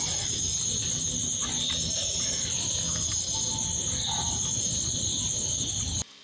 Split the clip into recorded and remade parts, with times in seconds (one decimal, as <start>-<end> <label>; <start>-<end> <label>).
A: 0.0-6.2 recorded